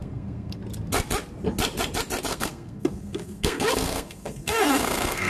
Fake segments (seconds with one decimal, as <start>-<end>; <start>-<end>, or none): 0.0-0.6; 2.3-5.3